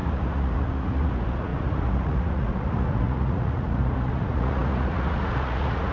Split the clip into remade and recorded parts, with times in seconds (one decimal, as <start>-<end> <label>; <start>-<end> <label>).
0.0-5.9 remade